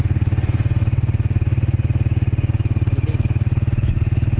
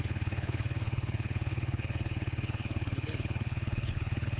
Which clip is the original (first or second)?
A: first